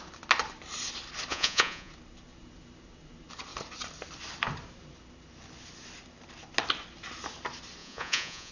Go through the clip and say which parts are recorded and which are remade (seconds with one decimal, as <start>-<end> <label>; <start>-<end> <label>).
0.0-1.3 recorded; 1.3-1.9 remade; 1.9-7.8 recorded; 7.8-8.5 remade